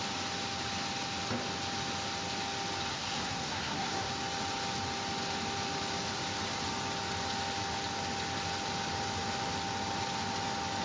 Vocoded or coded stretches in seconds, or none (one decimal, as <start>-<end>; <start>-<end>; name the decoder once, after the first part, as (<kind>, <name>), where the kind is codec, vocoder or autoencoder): 2.9-4.1 (codec, SNAC)